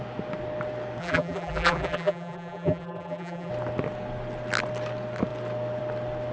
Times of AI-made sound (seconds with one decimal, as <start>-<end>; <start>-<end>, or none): 1.0-3.5